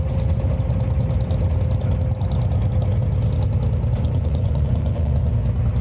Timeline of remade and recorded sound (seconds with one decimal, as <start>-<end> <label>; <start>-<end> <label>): 0.0-4.0 recorded; 4.0-5.3 remade; 5.3-5.8 recorded